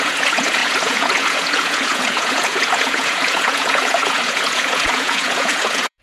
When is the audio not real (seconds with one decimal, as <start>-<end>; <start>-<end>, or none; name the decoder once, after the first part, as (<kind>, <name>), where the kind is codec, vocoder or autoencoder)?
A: 0.0-6.0 (vocoder, Vocos)